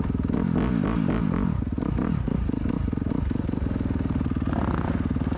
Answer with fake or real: real